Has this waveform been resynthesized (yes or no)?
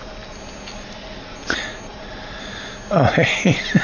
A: no